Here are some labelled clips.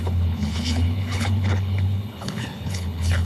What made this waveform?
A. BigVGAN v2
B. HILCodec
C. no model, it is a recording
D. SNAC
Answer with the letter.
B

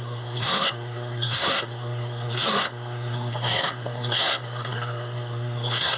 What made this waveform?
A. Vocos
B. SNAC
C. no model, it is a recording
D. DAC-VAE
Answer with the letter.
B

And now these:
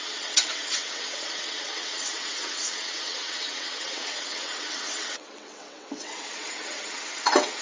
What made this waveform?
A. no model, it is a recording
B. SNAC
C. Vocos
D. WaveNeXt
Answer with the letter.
D